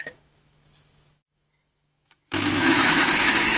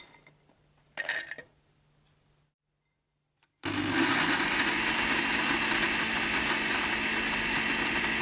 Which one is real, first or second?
second